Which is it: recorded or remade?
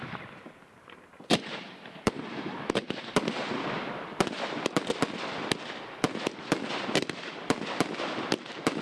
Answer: remade